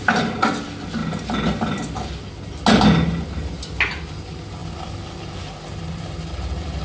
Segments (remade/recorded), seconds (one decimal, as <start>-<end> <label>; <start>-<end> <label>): 0.0-6.8 recorded